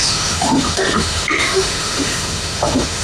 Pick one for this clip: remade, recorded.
remade